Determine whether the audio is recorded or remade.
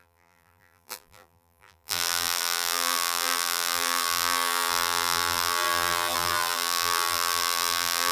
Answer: remade